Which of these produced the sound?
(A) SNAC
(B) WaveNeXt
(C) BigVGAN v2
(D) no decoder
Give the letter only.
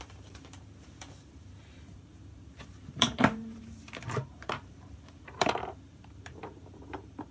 C